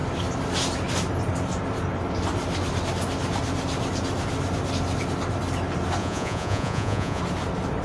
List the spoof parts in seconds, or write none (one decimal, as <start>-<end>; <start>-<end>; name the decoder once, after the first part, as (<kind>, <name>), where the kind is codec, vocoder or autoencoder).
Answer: 6.0-7.2 (vocoder, Vocos)